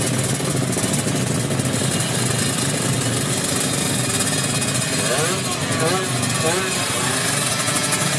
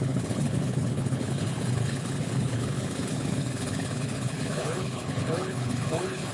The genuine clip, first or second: first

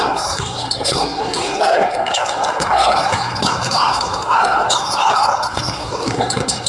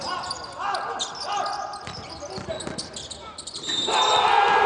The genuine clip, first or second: second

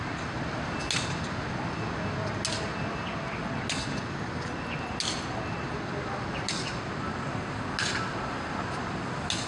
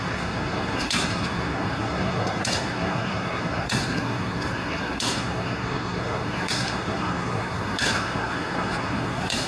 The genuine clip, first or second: first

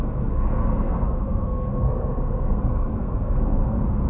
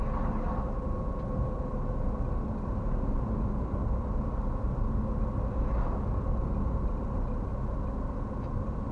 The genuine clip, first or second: second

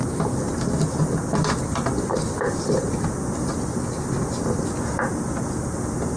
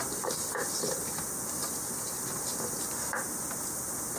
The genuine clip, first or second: first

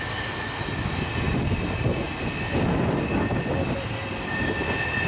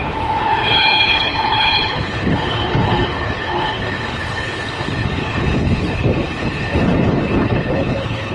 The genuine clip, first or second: first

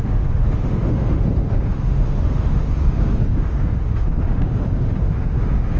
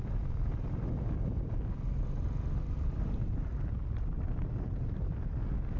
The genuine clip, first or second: second